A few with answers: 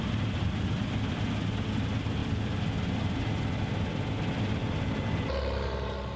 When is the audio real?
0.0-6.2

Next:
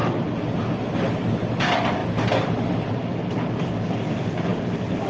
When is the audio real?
0.0-5.1